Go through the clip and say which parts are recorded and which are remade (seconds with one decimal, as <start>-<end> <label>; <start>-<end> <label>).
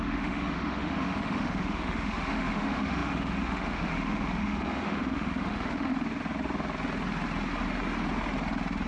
0.0-5.9 remade; 5.9-8.9 recorded